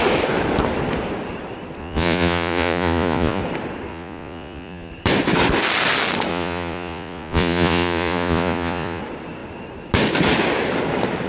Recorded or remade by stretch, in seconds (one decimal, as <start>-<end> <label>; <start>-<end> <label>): 0.0-1.8 recorded; 1.8-3.4 remade; 3.4-3.9 recorded; 3.9-4.9 remade; 4.9-6.3 recorded; 6.3-9.0 remade; 9.0-11.3 recorded